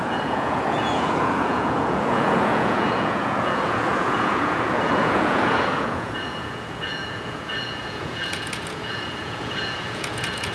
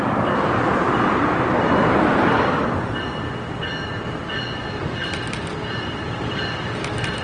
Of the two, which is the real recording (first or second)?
second